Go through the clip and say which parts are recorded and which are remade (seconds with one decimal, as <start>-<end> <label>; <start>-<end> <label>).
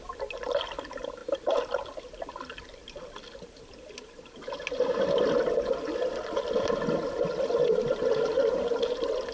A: 0.0-9.3 recorded